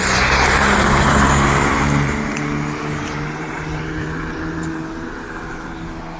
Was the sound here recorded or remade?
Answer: remade